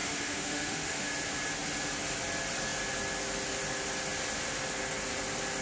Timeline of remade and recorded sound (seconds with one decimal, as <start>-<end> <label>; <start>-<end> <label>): 0.0-1.1 remade; 1.1-5.6 recorded